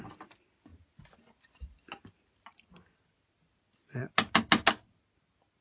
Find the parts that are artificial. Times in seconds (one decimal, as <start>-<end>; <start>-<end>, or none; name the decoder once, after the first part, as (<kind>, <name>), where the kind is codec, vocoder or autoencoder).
none